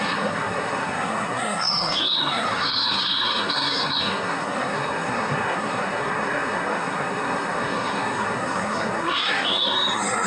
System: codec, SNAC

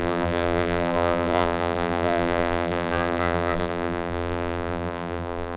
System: vocoder, BigVGAN v2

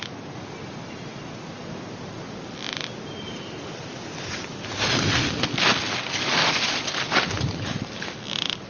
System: none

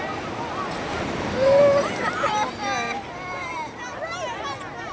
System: none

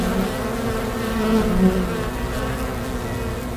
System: none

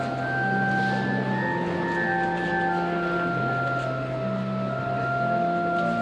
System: none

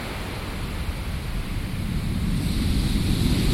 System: none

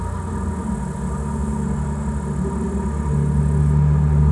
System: none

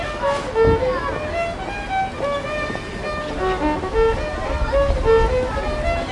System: none